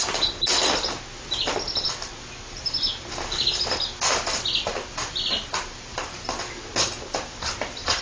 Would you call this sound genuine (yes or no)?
yes